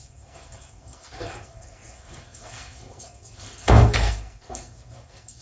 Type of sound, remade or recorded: remade